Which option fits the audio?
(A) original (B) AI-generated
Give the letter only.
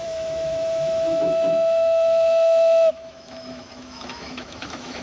B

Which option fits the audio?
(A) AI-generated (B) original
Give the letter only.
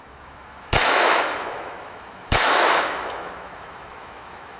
A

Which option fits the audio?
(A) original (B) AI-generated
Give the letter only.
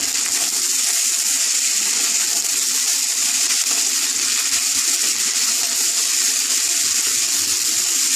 A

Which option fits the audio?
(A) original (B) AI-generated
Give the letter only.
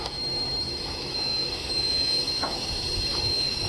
B